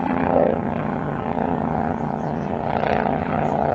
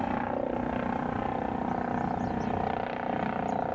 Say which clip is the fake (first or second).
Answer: first